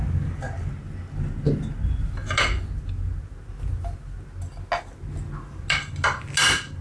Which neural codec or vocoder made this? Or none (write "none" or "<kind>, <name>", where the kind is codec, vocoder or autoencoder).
none